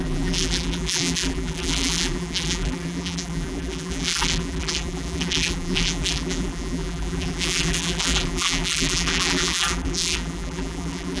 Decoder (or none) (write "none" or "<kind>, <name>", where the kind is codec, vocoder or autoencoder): vocoder, BigVGAN v2